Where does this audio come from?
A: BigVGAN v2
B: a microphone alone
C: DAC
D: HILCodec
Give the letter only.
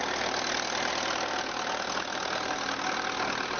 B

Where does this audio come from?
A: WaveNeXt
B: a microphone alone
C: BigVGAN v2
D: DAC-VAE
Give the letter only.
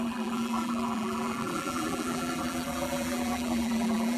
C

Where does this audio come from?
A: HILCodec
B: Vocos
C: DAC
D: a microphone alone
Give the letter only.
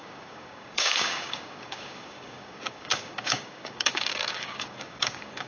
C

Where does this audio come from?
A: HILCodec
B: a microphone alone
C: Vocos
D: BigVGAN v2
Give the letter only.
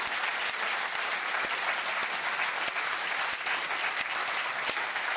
B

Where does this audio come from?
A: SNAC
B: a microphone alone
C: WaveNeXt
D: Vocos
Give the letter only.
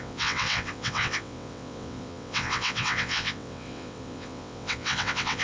C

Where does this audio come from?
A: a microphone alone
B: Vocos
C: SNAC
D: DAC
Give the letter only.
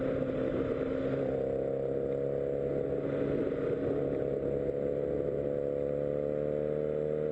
A